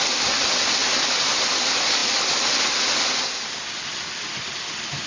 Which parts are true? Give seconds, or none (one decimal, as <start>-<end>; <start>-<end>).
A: 0.0-5.1